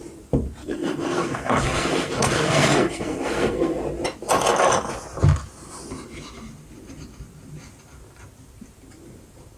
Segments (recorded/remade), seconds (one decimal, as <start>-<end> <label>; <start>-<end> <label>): 0.0-0.6 recorded; 0.6-3.8 remade; 3.8-9.6 recorded